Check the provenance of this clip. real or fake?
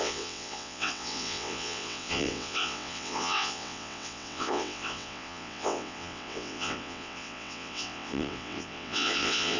fake